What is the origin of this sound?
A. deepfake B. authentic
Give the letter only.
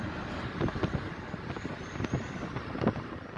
B